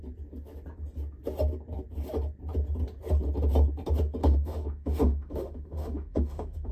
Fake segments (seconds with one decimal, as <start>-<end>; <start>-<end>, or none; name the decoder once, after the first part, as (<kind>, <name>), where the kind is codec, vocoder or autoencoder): 4.2-6.7 (autoencoder, DAC-VAE)